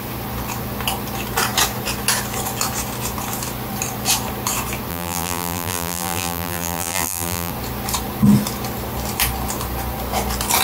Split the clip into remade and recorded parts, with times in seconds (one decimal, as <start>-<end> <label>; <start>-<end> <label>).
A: 0.0-4.9 recorded; 4.9-7.5 remade; 7.5-10.6 recorded